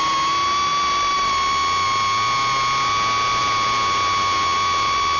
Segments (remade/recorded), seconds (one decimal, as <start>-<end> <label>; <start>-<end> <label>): 0.0-5.2 recorded

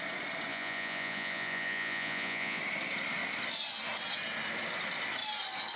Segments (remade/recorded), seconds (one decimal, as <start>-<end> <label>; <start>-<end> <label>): 0.0-0.5 recorded; 0.5-2.6 remade; 2.6-5.8 recorded

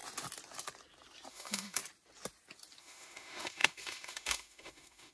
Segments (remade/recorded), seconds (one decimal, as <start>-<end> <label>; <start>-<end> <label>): 0.0-1.3 recorded; 1.3-1.8 remade; 1.8-2.8 recorded; 2.8-5.1 remade

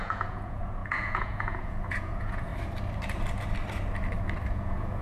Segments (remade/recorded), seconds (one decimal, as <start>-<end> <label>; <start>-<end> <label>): 0.0-2.5 remade; 2.5-4.5 recorded; 4.5-5.0 remade

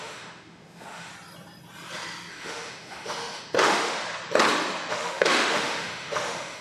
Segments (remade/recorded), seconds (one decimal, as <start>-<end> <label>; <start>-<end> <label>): 0.0-1.1 remade; 1.1-2.3 recorded; 2.3-4.0 remade; 4.0-4.9 recorded; 4.9-6.6 remade

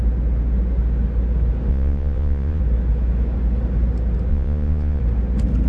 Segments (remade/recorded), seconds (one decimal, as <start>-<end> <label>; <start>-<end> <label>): 0.0-1.7 recorded; 1.7-2.6 remade; 2.6-4.3 recorded; 4.3-5.0 remade; 5.0-5.7 recorded

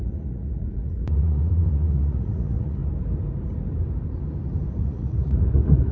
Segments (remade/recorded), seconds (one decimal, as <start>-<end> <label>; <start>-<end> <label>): 0.0-2.8 remade; 2.8-4.7 recorded; 4.7-5.9 remade

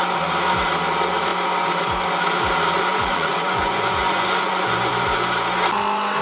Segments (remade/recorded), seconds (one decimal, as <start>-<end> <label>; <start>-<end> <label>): 0.0-2.9 recorded; 2.9-4.9 remade; 4.9-6.2 recorded